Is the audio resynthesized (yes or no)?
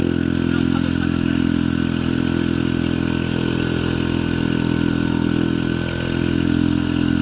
no